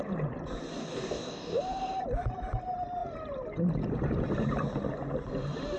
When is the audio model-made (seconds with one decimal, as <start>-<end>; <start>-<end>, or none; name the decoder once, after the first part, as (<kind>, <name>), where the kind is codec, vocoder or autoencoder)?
0.8-1.6 (codec, DAC)